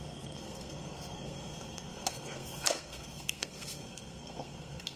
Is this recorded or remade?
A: remade